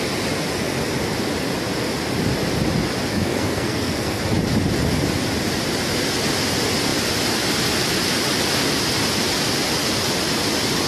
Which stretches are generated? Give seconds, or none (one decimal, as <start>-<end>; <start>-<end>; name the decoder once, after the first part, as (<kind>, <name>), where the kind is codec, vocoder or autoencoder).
3.1-4.2 (codec, SNAC)